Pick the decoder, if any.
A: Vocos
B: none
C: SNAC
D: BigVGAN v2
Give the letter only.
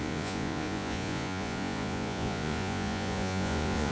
A